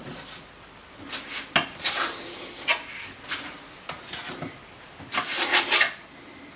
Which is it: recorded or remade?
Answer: recorded